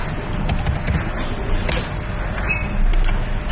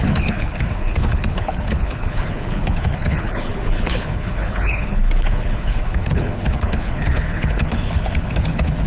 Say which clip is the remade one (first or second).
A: second